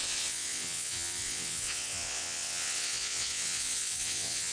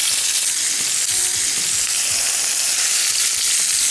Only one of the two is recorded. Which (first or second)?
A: second